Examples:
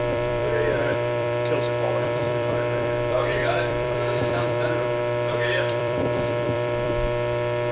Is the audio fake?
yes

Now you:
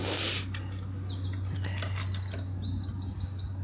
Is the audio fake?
no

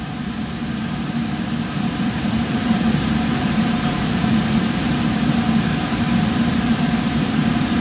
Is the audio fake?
yes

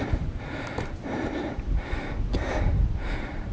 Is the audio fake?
yes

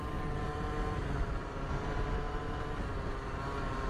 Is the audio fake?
yes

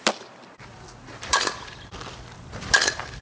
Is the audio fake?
yes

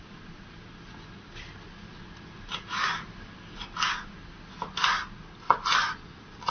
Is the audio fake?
no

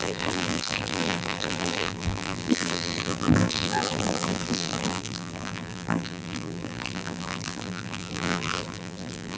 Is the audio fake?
yes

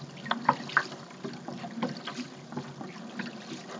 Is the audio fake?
no